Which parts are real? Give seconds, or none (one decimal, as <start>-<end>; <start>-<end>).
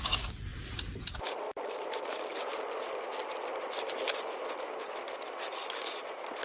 0.0-0.5; 1.9-2.3; 3.2-5.6